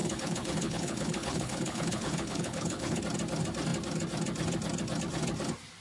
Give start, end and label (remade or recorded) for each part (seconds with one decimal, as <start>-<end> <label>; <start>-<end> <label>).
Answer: 0.0-3.0 remade; 3.0-5.8 recorded